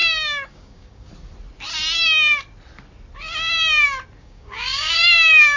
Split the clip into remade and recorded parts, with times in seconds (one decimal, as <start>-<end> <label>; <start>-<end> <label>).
0.0-0.5 recorded; 0.5-1.1 remade; 1.1-4.2 recorded; 4.2-5.6 remade